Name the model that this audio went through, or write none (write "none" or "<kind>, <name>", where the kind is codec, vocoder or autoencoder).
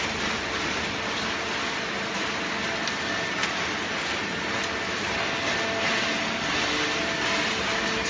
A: none